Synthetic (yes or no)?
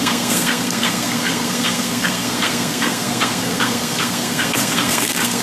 yes